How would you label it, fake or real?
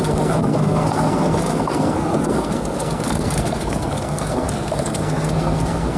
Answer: fake